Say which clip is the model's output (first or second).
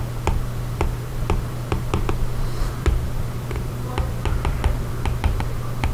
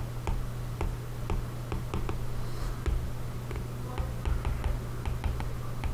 first